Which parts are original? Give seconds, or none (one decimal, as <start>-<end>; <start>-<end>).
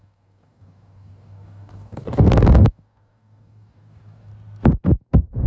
4.3-5.0